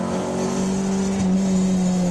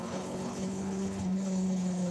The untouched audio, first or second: first